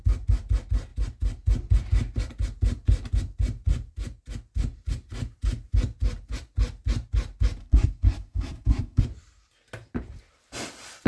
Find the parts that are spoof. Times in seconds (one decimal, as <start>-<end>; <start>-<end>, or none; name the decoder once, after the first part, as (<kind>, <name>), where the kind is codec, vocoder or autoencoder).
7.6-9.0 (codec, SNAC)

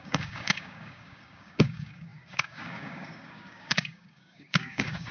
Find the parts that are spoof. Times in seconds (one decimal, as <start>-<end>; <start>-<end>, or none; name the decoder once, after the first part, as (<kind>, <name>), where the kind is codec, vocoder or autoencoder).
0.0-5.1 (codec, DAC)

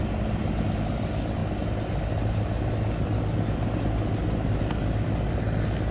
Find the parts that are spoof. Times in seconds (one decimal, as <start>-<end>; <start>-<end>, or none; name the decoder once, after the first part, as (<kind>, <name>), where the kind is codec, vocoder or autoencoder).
none

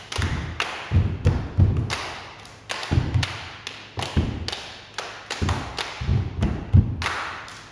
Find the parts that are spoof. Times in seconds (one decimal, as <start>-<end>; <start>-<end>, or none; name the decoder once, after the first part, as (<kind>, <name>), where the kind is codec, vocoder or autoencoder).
none

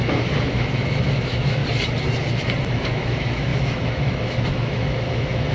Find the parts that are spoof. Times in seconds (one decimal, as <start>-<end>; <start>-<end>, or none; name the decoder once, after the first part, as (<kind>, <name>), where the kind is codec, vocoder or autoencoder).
0.0-1.6 (autoencoder, DAC-VAE); 2.7-5.5

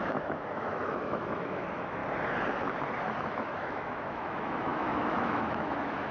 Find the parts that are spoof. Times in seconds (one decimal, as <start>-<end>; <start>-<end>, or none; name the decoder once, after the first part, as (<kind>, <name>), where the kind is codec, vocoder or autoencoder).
0.0-2.0 (autoencoder, DAC-VAE); 3.2-6.1

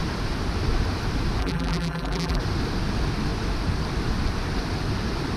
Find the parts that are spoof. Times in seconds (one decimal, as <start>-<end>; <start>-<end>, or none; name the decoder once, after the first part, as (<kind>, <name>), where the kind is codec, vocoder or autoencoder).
1.4-2.4 (vocoder, BigVGAN v2)